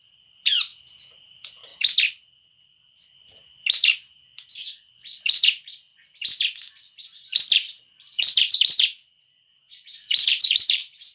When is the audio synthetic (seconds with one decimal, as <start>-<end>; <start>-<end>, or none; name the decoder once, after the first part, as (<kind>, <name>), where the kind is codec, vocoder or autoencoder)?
0.0-1.7 (vocoder, BigVGAN v2); 2.6-5.9; 7.7-11.1